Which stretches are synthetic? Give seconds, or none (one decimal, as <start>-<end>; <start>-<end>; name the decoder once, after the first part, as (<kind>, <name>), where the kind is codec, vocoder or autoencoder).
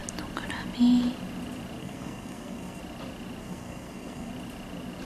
1.8-2.8 (codec, SNAC); 3.4-4.3